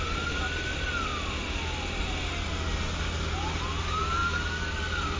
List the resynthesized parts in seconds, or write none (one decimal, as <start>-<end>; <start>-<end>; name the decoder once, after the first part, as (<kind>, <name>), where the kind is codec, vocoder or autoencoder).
none